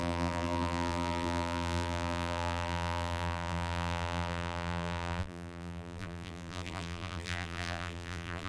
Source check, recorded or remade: remade